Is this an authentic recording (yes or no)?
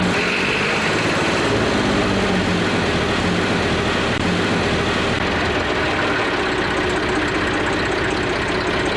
yes